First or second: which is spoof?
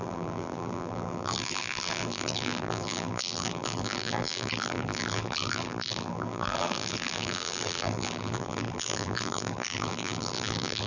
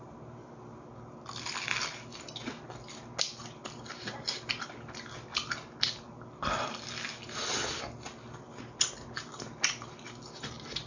first